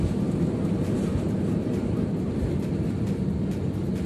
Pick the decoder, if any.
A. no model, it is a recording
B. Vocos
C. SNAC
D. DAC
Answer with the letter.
A